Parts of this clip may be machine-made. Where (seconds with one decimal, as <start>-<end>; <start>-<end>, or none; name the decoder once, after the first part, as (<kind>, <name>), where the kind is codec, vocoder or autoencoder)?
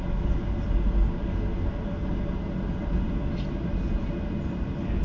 none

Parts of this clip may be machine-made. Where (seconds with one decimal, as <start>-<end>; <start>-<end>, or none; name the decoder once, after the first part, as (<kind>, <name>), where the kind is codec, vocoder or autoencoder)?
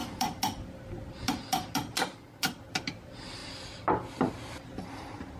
none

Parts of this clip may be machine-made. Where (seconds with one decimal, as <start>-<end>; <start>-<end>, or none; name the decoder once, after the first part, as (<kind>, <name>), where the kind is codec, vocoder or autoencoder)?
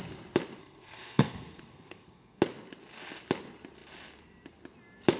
0.6-2.4 (codec, SNAC)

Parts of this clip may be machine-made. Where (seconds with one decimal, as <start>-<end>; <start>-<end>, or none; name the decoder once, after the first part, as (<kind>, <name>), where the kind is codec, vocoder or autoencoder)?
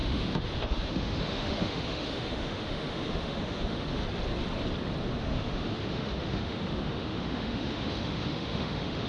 0.0-4.0 (autoencoder, DAC-VAE); 5.2-9.1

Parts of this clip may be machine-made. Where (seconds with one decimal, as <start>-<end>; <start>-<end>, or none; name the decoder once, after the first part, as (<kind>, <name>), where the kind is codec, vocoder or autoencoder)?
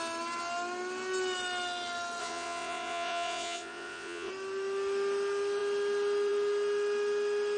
2.2-4.3 (vocoder, Vocos)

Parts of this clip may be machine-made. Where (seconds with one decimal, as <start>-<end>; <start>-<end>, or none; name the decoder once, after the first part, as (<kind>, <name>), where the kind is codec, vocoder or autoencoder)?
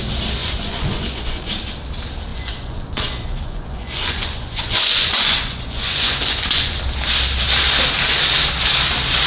0.4-1.5 (vocoder, Vocos); 2.3-6.8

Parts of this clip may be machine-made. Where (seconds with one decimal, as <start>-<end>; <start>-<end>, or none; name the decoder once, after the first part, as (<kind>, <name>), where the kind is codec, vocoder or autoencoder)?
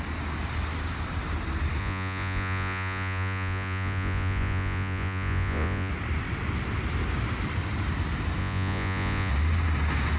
1.8-5.9 (vocoder, Vocos); 8.4-9.3